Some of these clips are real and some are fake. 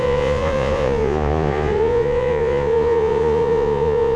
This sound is fake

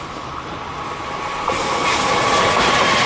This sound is real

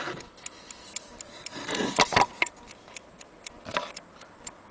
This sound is real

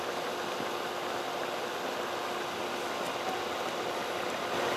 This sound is real